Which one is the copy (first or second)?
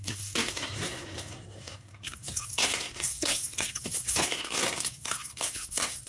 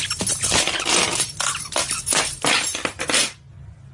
first